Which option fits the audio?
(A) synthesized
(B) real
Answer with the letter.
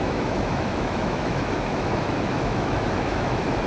A